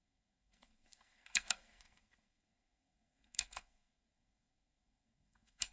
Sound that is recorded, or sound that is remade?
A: remade